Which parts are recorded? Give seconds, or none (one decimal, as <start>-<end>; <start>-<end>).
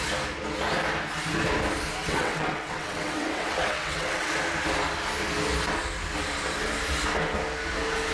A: 0.0-2.0; 4.3-8.1